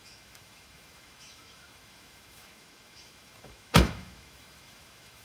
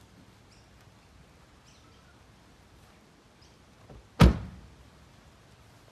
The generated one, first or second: first